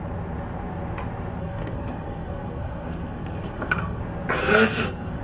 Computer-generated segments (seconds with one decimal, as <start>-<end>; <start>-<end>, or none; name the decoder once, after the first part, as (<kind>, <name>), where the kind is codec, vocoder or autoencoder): 1.4-4.0 (codec, SNAC); 4.4-5.2